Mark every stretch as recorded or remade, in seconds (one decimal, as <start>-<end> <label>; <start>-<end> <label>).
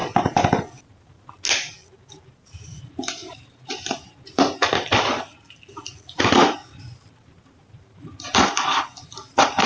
0.0-2.1 recorded; 2.1-9.7 remade